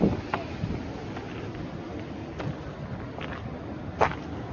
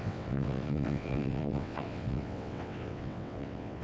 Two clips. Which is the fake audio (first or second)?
second